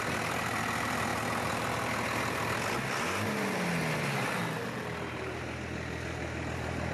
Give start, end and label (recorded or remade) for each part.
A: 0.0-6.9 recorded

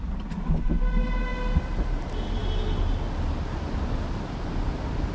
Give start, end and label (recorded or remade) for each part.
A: 0.0-5.1 recorded

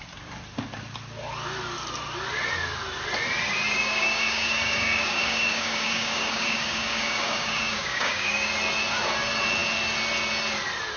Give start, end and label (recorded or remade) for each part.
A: 0.0-3.7 recorded; 3.7-8.5 remade; 8.5-11.0 recorded

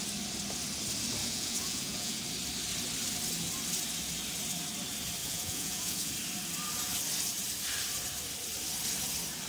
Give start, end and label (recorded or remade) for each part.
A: 0.0-1.2 recorded; 1.2-2.2 remade; 2.2-5.2 recorded; 5.2-6.1 remade; 6.1-9.5 recorded

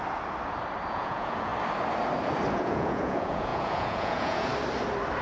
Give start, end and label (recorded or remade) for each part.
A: 0.0-0.9 recorded; 0.9-1.5 remade; 1.5-2.5 recorded; 2.5-4.5 remade; 4.5-5.2 recorded

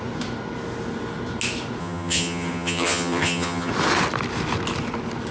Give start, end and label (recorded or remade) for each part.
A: 0.0-1.8 recorded; 1.8-3.7 remade; 3.7-5.3 recorded

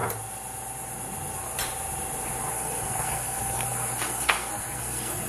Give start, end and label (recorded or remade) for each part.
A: 0.0-2.5 recorded; 2.5-5.3 remade